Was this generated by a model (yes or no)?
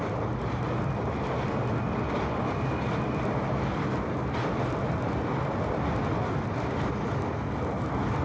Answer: no